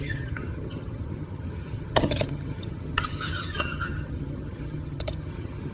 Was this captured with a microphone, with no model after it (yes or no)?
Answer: no